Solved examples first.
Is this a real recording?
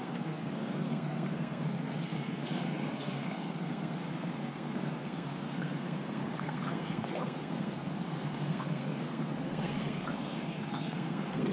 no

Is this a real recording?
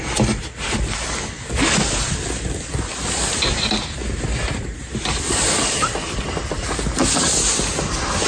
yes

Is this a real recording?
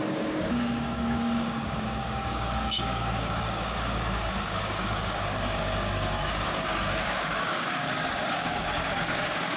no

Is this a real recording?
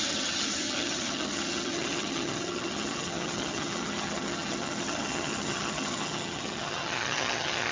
no